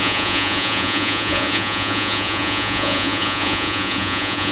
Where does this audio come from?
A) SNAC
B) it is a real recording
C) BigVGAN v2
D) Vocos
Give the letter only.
D